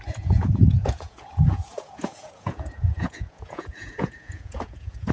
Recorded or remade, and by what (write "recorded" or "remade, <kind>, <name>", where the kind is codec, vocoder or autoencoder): remade, vocoder, Vocos